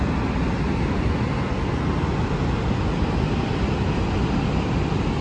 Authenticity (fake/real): real